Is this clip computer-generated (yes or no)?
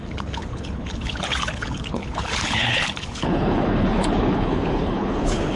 yes